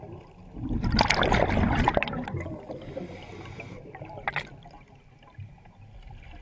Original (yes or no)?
yes